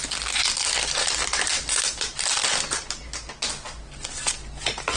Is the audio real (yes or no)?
yes